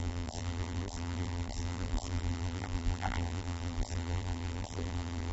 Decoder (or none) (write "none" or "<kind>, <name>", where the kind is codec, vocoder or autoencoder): vocoder, BigVGAN v2